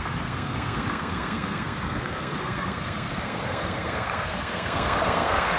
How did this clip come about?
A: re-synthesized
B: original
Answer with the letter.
A